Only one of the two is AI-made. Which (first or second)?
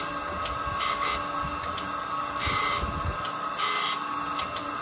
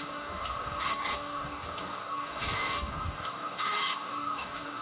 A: second